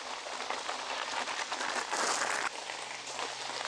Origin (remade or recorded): recorded